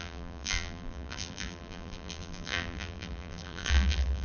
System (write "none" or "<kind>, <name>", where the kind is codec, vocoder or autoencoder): vocoder, BigVGAN v2